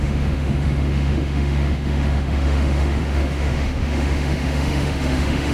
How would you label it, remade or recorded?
remade